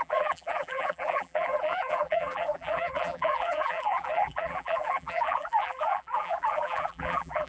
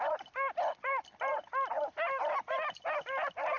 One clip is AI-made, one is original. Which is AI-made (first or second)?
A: first